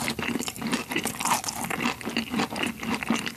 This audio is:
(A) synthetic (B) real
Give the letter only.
B